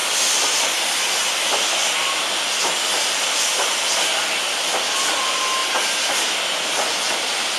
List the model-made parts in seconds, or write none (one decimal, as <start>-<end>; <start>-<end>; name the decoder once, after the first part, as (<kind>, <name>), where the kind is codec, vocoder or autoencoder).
none

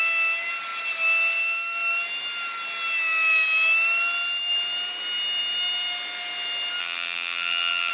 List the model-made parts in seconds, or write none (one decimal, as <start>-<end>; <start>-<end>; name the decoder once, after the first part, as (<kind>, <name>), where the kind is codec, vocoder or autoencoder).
6.8-7.9 (vocoder, BigVGAN v2)

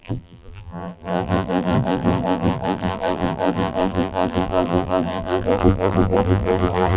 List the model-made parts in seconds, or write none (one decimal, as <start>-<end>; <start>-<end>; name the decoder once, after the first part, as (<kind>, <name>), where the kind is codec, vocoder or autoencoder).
0.0-7.0 (vocoder, BigVGAN v2)

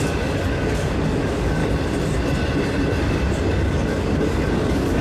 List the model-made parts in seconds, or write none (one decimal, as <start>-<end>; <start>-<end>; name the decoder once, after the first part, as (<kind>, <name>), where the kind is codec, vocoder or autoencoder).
0.0-1.6 (codec, DAC); 3.0-5.0

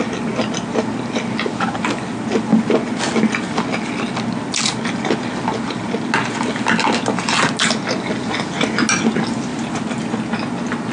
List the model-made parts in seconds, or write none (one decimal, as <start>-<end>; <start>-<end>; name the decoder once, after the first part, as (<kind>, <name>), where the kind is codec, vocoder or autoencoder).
9.5-10.0 (vocoder, BigVGAN v2)

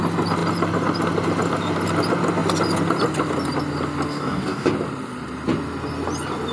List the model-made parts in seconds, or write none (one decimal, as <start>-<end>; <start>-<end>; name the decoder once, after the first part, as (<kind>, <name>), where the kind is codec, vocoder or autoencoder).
4.1-4.7 (codec, DAC)

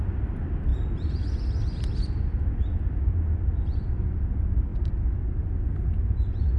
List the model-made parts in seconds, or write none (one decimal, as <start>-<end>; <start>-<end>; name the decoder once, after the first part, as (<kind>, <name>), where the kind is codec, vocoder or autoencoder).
none

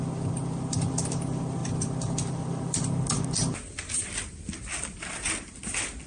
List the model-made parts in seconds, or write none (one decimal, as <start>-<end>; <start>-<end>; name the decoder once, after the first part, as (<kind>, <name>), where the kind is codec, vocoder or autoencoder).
none